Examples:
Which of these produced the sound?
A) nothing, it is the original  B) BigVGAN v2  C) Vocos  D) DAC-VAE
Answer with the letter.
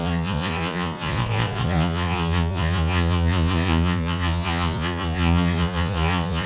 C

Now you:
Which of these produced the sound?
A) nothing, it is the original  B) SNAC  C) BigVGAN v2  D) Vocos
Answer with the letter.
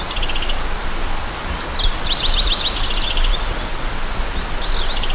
A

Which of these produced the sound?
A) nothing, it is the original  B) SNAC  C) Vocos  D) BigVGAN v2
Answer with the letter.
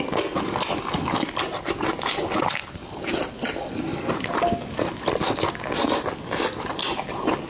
A